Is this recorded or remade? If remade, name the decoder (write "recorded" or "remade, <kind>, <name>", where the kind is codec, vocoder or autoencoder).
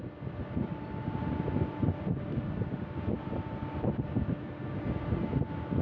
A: recorded